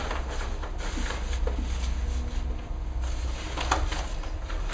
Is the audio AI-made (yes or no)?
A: no